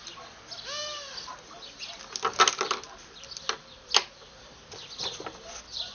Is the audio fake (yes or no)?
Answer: no